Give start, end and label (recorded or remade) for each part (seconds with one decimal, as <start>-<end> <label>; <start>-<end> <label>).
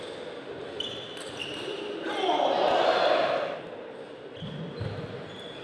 0.0-5.6 recorded